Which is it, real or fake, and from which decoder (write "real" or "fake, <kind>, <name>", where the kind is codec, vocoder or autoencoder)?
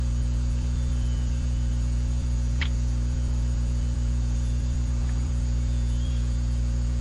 fake, vocoder, Vocos